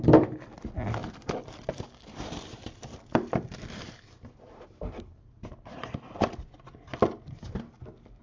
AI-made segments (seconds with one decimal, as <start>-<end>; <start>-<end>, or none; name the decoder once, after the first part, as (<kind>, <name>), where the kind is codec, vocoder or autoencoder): 1.0-5.9 (vocoder, BigVGAN v2)